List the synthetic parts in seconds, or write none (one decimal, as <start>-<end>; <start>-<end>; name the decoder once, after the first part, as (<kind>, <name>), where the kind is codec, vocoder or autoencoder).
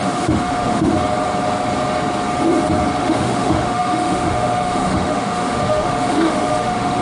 0.0-0.9 (autoencoder, DAC-VAE); 3.0-7.0